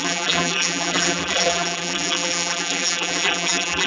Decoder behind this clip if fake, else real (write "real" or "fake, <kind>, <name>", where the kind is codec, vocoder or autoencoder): fake, vocoder, BigVGAN v2